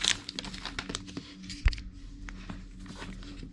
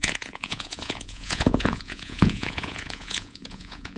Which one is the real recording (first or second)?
first